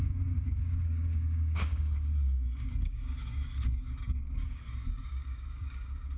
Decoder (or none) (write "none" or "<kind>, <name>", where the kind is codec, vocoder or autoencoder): codec, DAC